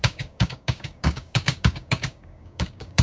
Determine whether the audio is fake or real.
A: fake